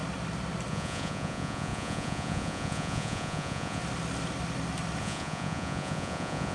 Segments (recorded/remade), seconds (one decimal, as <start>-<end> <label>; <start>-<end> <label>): 0.0-0.7 recorded; 0.7-3.8 remade; 3.8-5.0 recorded; 5.0-6.5 remade